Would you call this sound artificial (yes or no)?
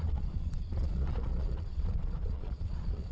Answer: yes